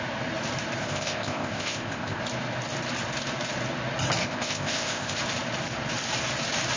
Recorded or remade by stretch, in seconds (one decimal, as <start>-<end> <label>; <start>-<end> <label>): 0.0-0.8 recorded; 0.8-2.2 remade; 2.2-4.2 recorded; 4.2-5.2 remade; 5.2-6.8 recorded